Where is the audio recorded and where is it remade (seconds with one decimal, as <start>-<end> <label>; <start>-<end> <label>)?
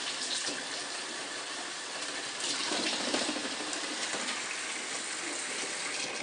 0.0-6.2 recorded